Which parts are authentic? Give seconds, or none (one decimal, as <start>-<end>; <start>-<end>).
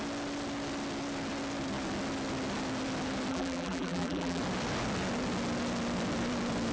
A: 0.0-3.3; 4.4-6.7